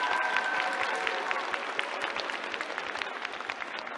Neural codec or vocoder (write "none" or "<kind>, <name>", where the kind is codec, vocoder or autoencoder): none